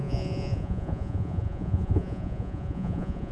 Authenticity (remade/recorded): remade